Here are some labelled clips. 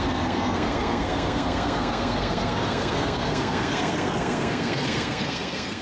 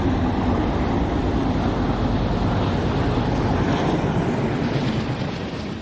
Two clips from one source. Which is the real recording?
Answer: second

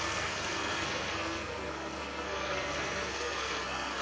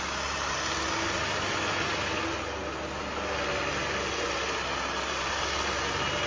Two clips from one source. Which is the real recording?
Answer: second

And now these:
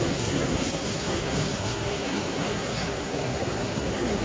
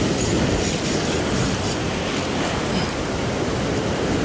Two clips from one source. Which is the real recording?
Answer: second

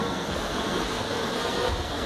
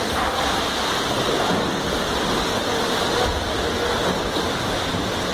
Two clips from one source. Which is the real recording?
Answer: second